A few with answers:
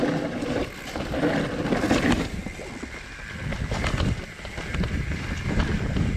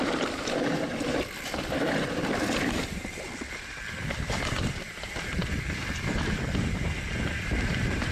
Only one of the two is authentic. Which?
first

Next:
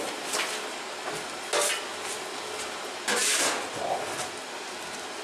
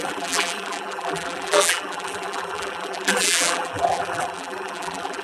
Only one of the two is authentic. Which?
first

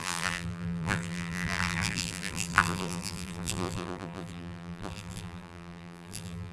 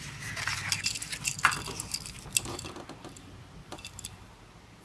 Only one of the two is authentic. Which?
second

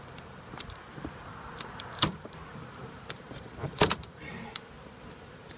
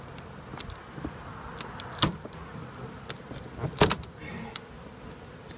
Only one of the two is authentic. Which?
second